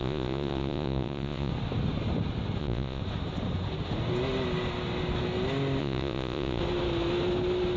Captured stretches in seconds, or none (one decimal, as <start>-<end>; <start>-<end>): 1.5-2.6; 3.0-5.8; 6.6-7.8